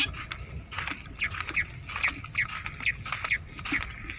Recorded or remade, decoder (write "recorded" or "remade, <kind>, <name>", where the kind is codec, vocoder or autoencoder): recorded